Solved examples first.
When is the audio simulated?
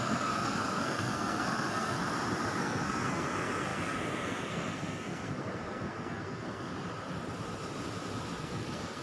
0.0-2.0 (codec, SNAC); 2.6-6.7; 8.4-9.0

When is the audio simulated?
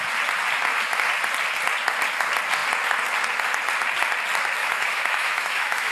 4.6-5.9 (autoencoder, DAC-VAE)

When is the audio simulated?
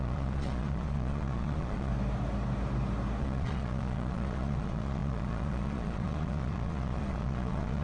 0.0-1.9 (vocoder, Vocos); 3.2-7.8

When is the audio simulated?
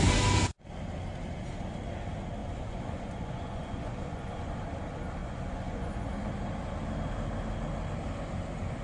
2.4-4.6 (vocoder, Vocos); 5.2-6.1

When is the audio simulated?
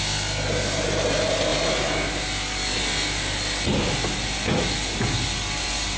none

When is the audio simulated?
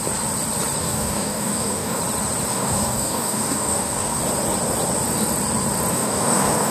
0.8-2.0 (codec, DAC); 2.5-4.2; 5.9-6.7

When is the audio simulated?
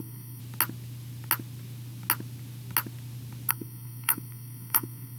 0.0-0.4 (codec, SNAC); 3.5-5.2